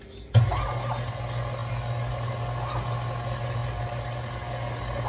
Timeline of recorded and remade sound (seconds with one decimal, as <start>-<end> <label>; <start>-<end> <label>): 0.0-1.6 recorded; 1.6-2.1 remade; 2.1-5.1 recorded